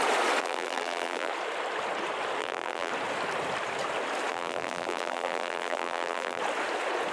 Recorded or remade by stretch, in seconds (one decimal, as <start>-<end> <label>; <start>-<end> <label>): 0.0-0.4 recorded; 0.4-1.3 remade; 1.3-2.4 recorded; 2.4-2.9 remade; 2.9-4.3 recorded; 4.3-6.4 remade; 6.4-7.1 recorded